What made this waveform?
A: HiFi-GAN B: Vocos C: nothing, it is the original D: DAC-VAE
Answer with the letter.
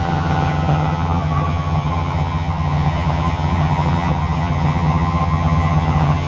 A